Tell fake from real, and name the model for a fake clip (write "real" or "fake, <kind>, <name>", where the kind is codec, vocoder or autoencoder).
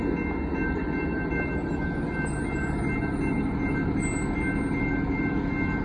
real